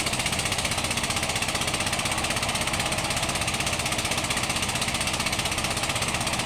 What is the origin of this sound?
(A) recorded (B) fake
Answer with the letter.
A